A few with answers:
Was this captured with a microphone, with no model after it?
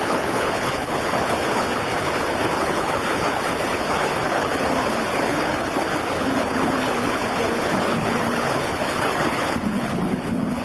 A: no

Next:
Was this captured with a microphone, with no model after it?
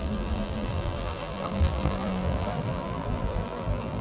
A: no